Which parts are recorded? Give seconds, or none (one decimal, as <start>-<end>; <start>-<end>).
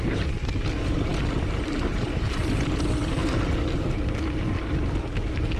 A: 0.0-5.6